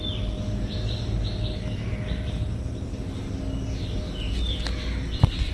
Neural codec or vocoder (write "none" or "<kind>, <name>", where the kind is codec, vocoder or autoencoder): none